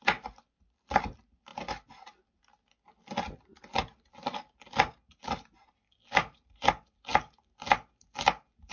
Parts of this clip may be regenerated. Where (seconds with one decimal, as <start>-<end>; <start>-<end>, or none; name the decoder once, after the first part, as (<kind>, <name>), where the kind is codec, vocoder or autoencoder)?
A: none